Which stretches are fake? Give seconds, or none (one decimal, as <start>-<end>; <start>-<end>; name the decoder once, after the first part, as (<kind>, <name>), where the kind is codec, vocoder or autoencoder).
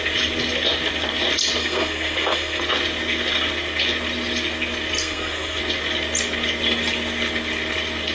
1.6-2.6 (codec, SNAC); 5.0-5.6